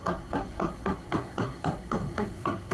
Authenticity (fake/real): fake